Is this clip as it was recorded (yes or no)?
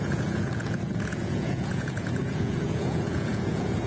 no